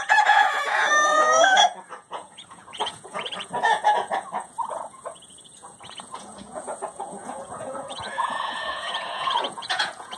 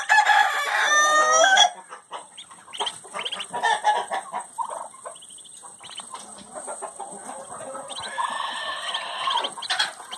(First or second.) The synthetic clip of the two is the first